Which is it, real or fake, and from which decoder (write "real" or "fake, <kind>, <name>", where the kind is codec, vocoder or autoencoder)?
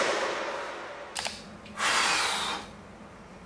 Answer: real